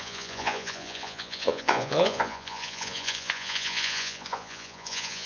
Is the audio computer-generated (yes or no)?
yes